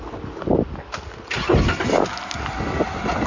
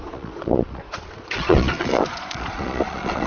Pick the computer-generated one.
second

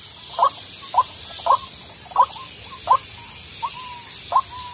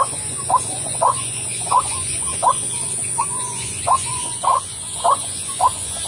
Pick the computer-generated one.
second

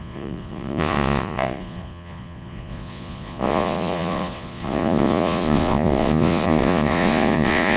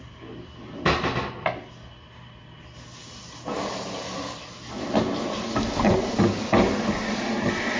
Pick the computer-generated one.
first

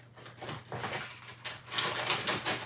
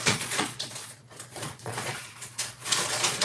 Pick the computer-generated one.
second